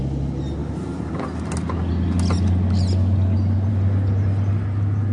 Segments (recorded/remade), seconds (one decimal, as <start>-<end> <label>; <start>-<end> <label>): 0.0-5.1 recorded